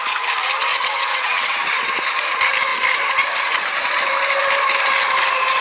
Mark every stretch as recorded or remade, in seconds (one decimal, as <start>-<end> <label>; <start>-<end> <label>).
0.0-0.7 recorded; 0.7-1.6 remade; 1.6-5.6 recorded